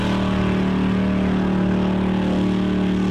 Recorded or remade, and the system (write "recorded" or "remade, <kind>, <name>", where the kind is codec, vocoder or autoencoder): recorded